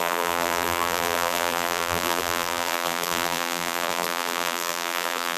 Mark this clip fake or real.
fake